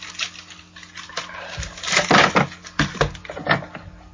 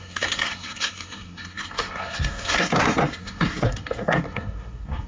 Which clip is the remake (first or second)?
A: second